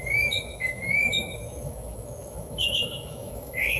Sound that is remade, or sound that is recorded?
remade